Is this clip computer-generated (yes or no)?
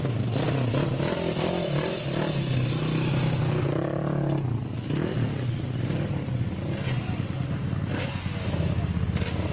no